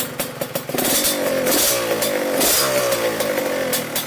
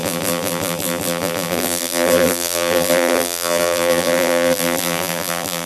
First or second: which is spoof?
second